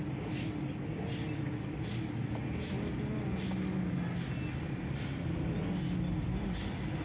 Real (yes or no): yes